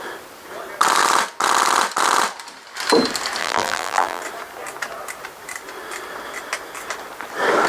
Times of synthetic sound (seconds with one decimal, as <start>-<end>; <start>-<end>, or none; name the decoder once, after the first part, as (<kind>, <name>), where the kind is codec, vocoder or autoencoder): 3.4-4.2 (vocoder, BigVGAN v2)